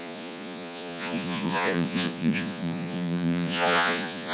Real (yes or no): no